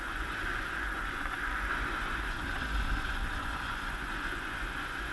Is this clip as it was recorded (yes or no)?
no